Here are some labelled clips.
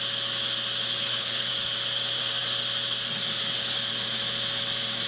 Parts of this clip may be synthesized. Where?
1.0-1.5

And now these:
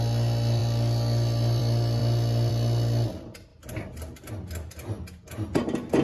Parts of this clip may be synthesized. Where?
none

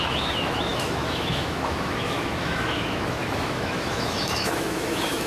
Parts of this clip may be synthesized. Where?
0.0-5.3